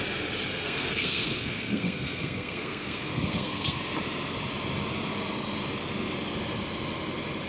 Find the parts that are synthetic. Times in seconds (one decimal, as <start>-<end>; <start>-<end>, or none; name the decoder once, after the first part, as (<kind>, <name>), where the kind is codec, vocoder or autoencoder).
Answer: 0.5-3.8 (codec, SNAC)